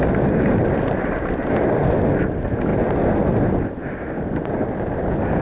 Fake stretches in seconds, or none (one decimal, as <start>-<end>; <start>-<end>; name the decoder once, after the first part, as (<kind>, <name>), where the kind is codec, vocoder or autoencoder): none